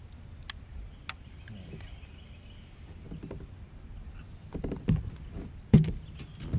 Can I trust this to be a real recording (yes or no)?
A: yes